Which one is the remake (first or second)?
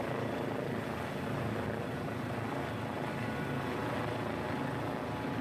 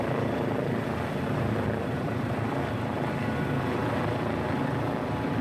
second